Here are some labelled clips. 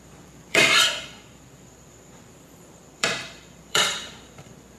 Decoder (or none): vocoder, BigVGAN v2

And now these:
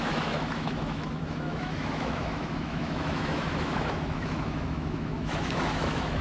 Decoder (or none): autoencoder, DAC-VAE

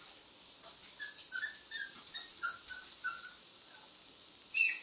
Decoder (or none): none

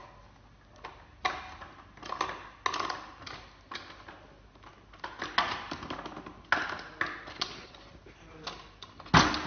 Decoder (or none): none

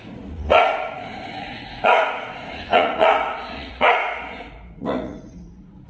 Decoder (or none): vocoder, Vocos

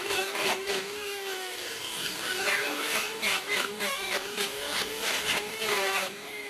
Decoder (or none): codec, DAC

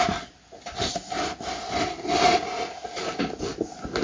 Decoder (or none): none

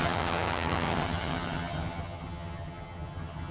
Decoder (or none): vocoder, HiFi-GAN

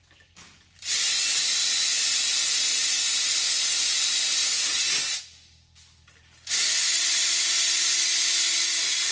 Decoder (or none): none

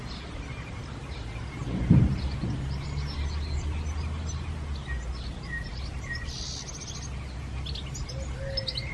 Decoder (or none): none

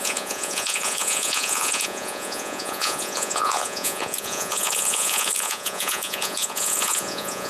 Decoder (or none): vocoder, Vocos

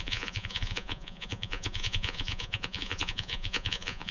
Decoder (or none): vocoder, Vocos